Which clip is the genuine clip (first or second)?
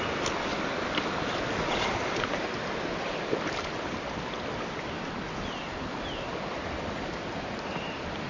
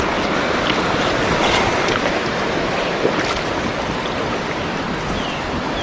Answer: second